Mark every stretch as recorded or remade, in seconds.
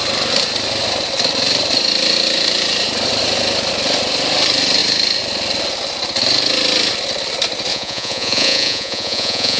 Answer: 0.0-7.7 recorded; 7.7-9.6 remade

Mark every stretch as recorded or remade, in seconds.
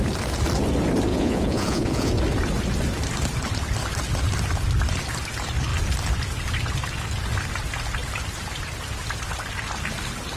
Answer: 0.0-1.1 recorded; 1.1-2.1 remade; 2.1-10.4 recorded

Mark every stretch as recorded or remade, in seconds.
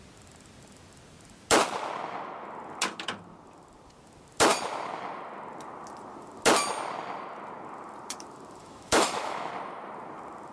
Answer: 0.0-8.6 recorded; 8.6-9.5 remade; 9.5-10.5 recorded